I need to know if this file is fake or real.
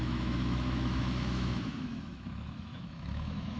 fake